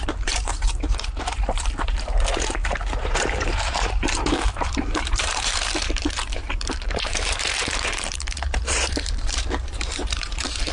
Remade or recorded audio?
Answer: remade